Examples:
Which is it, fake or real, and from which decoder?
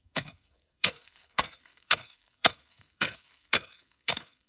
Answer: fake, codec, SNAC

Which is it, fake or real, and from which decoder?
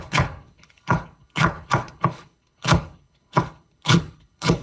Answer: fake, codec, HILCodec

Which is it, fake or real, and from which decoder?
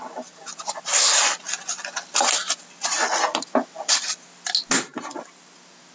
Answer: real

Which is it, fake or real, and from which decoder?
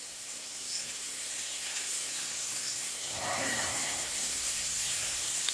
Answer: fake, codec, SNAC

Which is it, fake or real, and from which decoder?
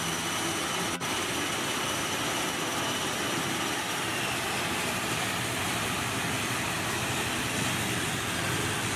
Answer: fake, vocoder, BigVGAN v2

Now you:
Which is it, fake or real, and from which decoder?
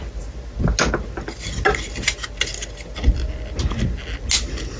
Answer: real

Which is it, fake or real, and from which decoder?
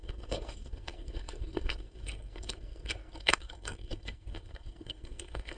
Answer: fake, codec, SNAC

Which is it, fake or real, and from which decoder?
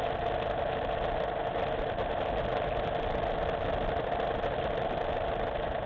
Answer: real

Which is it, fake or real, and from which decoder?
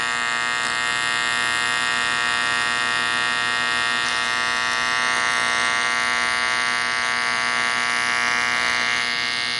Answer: real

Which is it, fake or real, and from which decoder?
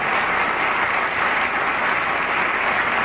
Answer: real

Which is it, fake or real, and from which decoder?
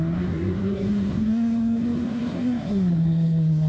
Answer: fake, codec, SNAC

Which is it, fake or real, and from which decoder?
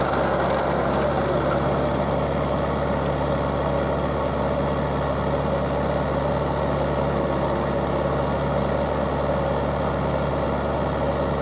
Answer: real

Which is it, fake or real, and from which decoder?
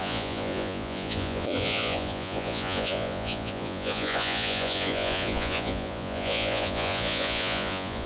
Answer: fake, vocoder, Vocos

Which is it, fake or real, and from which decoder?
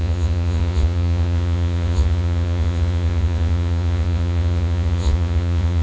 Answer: fake, vocoder, Vocos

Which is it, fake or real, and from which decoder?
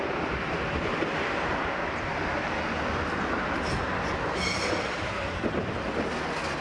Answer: real